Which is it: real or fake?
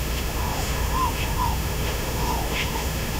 fake